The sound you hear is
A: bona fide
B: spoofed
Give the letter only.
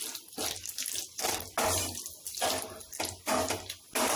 A